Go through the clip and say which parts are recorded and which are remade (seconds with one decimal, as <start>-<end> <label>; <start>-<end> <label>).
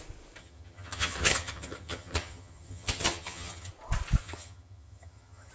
0.0-0.4 recorded; 0.4-3.7 remade; 3.7-4.2 recorded; 4.2-5.5 remade